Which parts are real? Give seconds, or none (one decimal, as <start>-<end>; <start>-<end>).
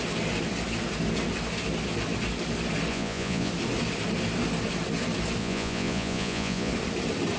0.0-2.9; 3.5-5.4; 6.7-7.4